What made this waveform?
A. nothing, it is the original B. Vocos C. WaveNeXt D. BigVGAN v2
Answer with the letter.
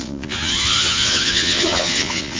B